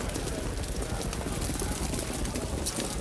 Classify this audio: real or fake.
real